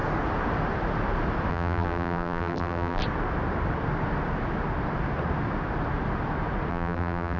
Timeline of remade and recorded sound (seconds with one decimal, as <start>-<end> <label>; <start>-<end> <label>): 0.0-1.5 recorded; 1.5-3.0 remade; 3.0-6.7 recorded; 6.7-7.4 remade